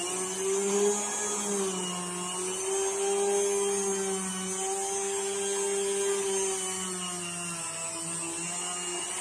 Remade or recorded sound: recorded